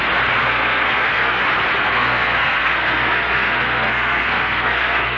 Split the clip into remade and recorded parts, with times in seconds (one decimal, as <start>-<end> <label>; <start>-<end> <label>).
0.0-0.4 recorded; 0.4-1.4 remade; 1.4-1.8 recorded; 1.8-5.2 remade